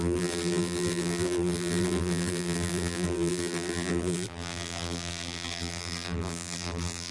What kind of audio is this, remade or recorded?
remade